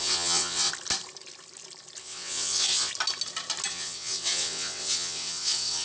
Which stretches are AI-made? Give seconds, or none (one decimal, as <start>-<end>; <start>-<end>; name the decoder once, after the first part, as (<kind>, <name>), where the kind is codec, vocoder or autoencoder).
0.0-0.7 (vocoder, WaveNeXt); 2.0-2.9; 3.7-5.8